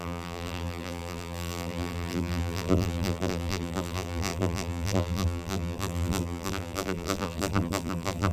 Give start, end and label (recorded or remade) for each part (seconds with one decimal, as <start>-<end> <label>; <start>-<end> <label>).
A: 0.0-8.3 remade

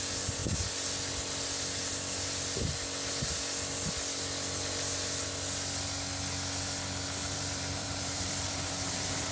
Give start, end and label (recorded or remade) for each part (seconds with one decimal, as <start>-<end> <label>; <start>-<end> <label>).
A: 0.0-7.2 recorded; 7.2-9.3 remade

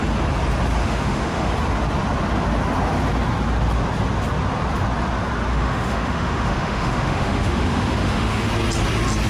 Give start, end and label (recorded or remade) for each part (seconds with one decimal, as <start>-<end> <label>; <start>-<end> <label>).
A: 0.0-0.8 recorded; 0.8-1.5 remade; 1.5-5.5 recorded; 5.5-8.5 remade; 8.5-9.3 recorded

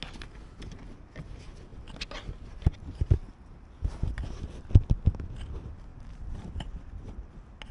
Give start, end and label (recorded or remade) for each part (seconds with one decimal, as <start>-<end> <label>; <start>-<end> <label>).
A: 0.0-5.9 recorded; 5.9-7.1 remade; 7.1-7.7 recorded